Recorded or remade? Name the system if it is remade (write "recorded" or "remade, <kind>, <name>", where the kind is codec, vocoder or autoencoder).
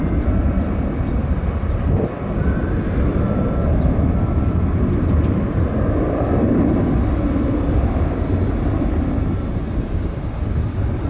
recorded